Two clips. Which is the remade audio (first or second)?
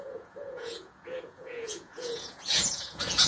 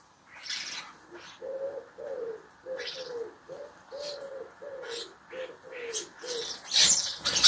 first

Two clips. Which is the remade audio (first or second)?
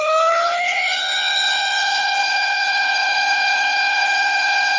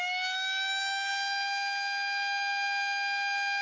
first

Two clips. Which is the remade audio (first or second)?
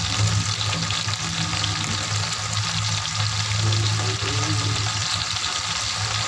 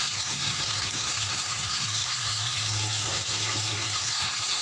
second